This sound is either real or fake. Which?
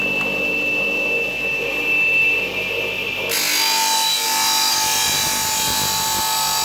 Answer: real